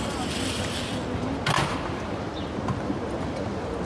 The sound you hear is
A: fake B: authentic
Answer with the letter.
B